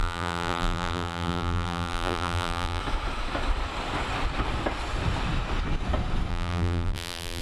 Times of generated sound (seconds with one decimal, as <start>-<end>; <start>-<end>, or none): 0.0-2.8; 6.3-7.4